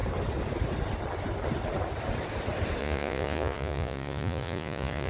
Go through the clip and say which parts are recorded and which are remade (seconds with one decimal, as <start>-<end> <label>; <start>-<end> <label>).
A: 0.0-2.8 recorded; 2.8-5.1 remade